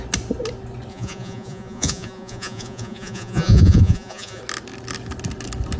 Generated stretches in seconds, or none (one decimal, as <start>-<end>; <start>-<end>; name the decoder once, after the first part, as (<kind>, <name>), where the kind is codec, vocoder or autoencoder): 0.9-4.4 (vocoder, Vocos)